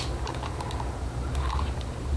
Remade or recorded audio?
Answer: remade